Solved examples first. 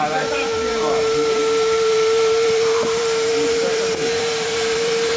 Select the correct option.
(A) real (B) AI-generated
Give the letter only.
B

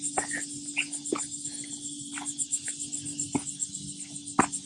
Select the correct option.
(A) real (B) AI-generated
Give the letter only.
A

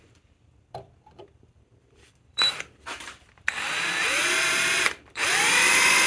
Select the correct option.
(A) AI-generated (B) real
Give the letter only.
A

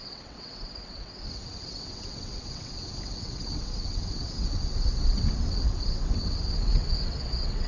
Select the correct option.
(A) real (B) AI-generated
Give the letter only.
B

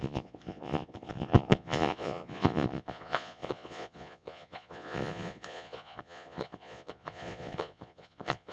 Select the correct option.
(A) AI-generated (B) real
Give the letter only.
A